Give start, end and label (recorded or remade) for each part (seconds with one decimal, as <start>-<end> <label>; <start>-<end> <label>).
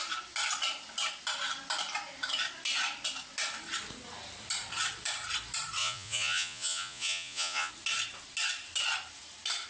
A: 0.0-5.8 recorded; 5.8-7.7 remade; 7.7-9.7 recorded